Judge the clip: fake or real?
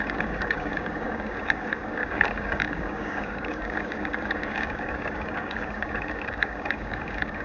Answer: fake